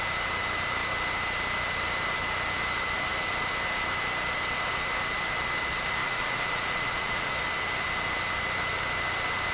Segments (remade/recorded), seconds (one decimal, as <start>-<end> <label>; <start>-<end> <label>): 0.0-6.0 recorded; 6.0-7.3 remade; 7.3-9.5 recorded